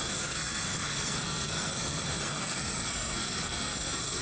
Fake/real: fake